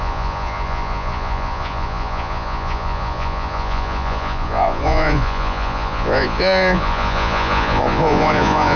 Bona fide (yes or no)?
no